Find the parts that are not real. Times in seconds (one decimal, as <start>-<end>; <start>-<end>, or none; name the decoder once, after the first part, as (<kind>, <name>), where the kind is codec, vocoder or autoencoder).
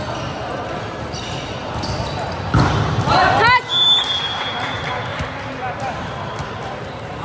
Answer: none